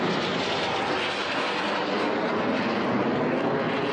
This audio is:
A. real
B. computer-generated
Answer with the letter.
A